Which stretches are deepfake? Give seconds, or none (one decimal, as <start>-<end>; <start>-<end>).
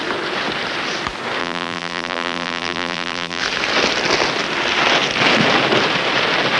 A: 1.4-3.4